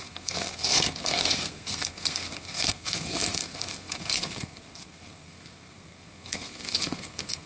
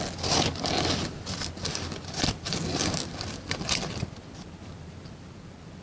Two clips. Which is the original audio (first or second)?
second